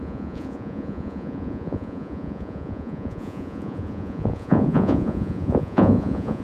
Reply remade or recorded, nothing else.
remade